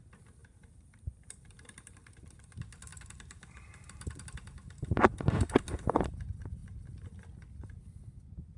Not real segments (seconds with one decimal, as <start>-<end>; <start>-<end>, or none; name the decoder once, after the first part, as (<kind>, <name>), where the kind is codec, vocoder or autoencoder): 0.4-2.2 (vocoder, BigVGAN v2); 2.9-6.1